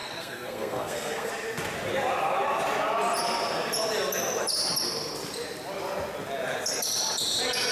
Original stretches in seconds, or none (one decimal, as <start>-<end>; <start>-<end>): 1.3-7.7